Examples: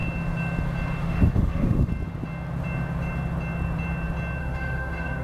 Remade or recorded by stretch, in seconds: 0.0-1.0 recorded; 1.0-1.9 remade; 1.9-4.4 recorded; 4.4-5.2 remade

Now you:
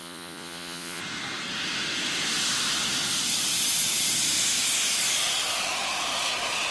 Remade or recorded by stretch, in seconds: 0.0-1.0 remade; 1.0-6.7 recorded

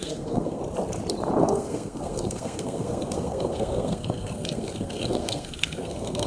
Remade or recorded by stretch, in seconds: 0.0-0.6 remade; 0.6-1.4 recorded; 1.4-6.3 remade

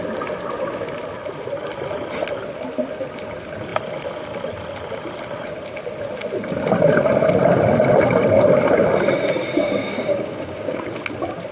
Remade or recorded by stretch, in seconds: 0.0-9.6 recorded; 9.6-10.9 remade; 10.9-11.5 recorded